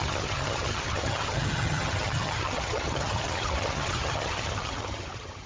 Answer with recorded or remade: remade